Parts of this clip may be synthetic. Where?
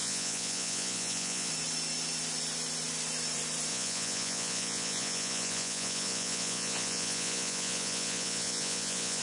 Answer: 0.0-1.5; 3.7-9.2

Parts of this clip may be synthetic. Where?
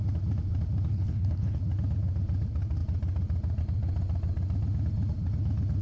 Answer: 0.9-1.6